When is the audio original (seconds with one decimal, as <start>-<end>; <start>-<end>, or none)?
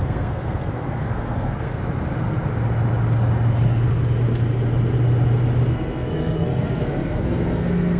1.8-5.7